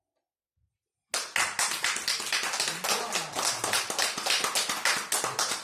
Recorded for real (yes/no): yes